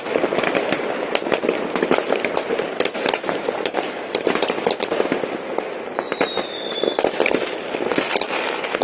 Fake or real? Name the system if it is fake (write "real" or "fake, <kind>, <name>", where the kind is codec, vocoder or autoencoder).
fake, vocoder, BigVGAN v2